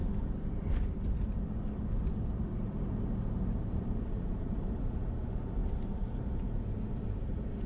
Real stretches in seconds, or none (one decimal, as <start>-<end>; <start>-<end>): 0.0-3.6